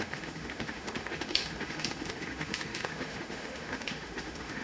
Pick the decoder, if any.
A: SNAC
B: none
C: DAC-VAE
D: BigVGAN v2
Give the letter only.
C